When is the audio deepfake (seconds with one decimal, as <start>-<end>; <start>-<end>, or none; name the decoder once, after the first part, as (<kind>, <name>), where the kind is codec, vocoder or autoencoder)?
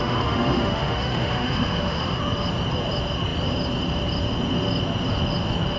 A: 0.0-2.2 (autoencoder, DAC-VAE)